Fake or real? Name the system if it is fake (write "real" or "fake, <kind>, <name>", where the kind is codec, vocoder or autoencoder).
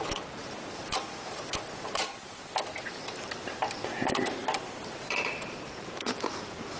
fake, vocoder, BigVGAN v2